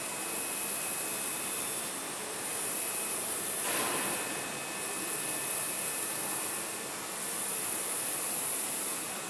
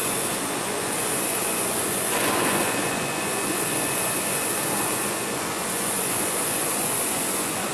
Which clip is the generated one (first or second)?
second